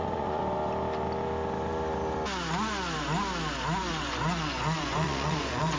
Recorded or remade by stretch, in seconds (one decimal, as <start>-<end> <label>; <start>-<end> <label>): 0.0-0.4 remade; 0.4-3.9 recorded; 3.9-5.8 remade